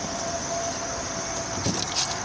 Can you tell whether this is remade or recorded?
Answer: recorded